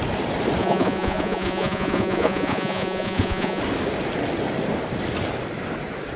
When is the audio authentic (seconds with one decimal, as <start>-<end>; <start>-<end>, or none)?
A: 0.0-0.6; 3.6-6.2